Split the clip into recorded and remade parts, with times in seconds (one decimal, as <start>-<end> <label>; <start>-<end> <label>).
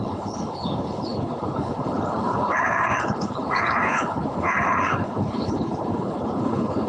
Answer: 0.0-6.9 remade